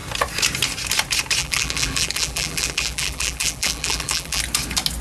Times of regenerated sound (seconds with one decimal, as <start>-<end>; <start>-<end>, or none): 1.4-4.4